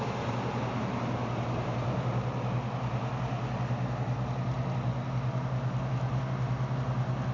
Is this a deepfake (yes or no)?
no